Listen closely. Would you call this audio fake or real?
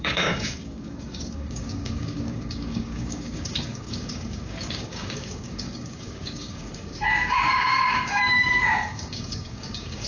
fake